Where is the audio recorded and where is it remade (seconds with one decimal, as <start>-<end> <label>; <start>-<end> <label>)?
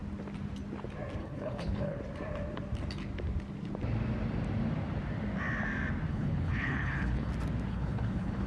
0.0-1.2 recorded; 1.2-2.0 remade; 2.0-6.1 recorded; 6.1-7.3 remade; 7.3-7.7 recorded; 7.7-8.5 remade